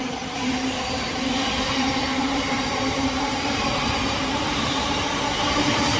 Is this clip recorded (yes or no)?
no